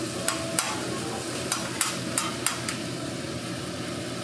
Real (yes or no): yes